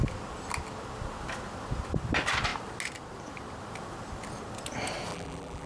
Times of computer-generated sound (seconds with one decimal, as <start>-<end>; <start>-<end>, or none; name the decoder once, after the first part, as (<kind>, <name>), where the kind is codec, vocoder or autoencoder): 5.1-5.7 (vocoder, BigVGAN v2)